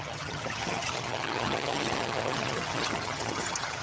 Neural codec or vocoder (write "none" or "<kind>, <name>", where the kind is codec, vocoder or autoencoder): vocoder, HiFi-GAN